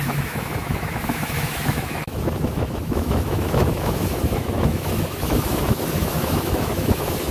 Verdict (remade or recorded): remade